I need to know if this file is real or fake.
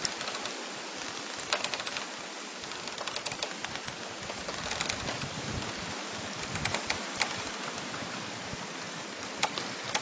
real